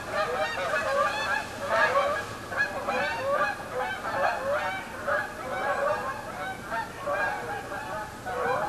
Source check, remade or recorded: recorded